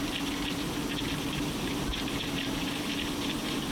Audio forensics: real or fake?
real